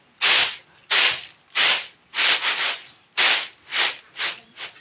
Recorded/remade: recorded